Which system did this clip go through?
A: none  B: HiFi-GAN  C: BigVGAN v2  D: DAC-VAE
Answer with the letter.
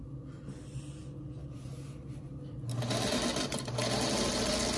A